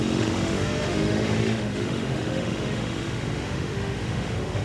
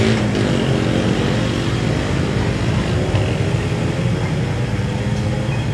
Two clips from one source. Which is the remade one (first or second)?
first